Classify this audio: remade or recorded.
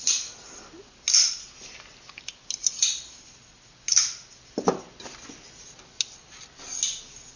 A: recorded